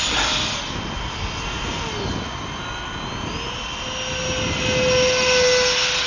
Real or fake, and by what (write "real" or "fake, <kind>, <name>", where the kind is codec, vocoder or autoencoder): real